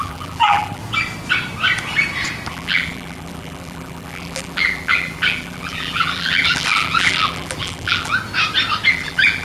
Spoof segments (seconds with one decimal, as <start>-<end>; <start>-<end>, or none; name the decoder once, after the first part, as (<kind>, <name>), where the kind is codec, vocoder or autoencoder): 0.0-0.8 (vocoder, BigVGAN v2); 2.5-8.1; 8.9-9.4